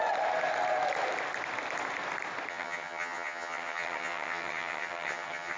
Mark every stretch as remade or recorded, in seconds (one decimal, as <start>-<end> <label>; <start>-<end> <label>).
0.0-2.5 recorded; 2.5-5.6 remade